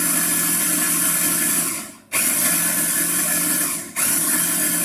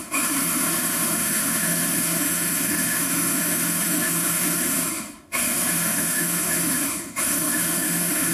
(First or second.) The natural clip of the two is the first